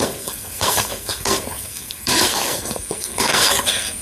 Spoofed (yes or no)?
yes